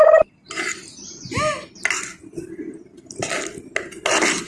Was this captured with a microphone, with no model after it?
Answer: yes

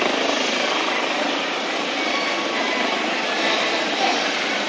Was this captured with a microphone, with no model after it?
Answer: no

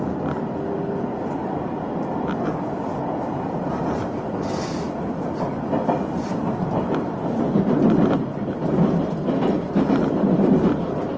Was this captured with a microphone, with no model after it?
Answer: yes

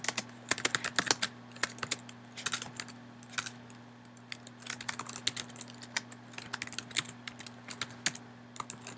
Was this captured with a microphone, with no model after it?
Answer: yes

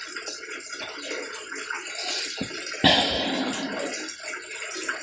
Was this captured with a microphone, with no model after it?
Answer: yes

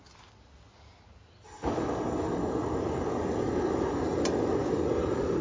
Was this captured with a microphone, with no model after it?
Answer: yes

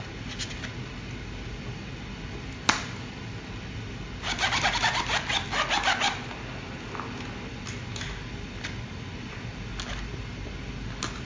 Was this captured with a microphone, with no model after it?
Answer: yes